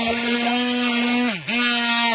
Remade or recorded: recorded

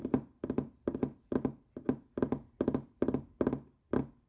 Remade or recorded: recorded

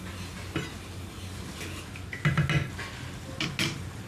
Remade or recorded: recorded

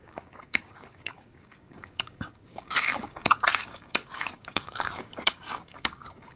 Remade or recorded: remade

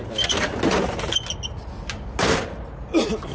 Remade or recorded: recorded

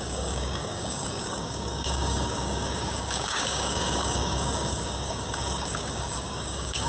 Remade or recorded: remade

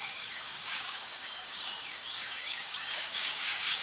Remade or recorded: remade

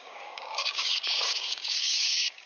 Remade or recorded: remade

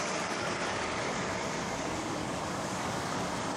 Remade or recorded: remade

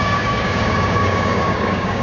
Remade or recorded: remade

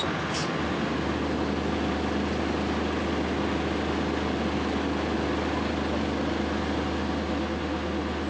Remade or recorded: recorded